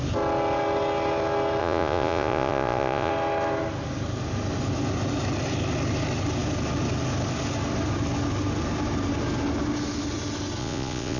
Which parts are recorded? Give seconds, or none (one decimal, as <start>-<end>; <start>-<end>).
0.0-1.6; 3.1-10.6